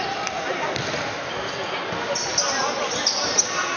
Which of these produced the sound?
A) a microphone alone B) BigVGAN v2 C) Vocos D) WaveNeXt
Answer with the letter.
A